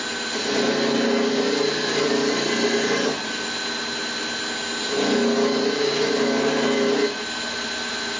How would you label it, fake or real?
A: real